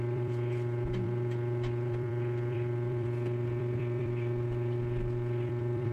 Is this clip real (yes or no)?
no